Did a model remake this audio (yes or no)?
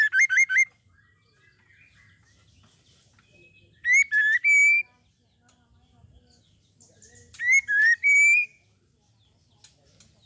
no